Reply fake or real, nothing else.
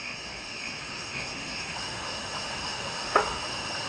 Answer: fake